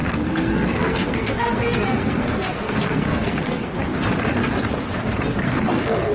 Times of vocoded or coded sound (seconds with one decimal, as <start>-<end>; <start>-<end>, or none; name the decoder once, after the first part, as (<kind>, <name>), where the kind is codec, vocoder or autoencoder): 0.0-3.7 (codec, SNAC); 5.4-6.1